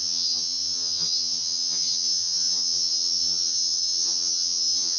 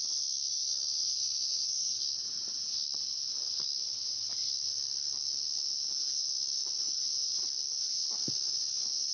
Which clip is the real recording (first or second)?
second